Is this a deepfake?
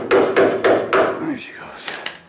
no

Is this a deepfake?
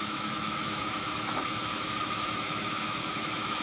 yes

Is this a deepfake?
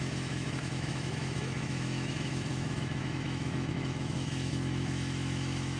yes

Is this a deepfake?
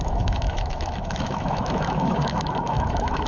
yes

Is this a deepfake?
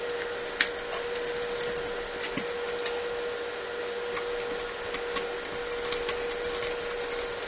no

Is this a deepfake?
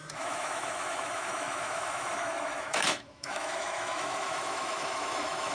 yes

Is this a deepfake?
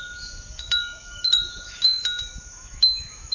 yes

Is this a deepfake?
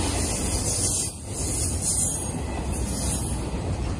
no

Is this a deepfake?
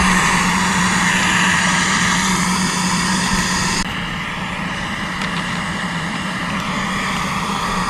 no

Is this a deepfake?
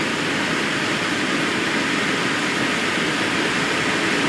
no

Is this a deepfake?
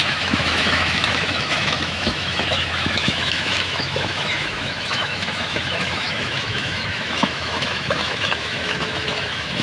yes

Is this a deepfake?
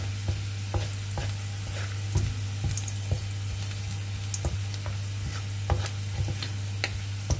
no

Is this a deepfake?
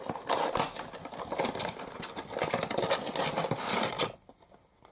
no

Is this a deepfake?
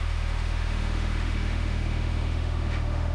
yes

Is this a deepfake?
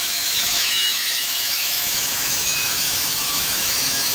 yes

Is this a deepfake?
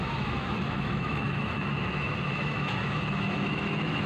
yes